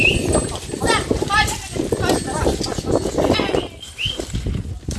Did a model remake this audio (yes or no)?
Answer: no